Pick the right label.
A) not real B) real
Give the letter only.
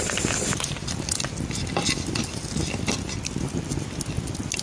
B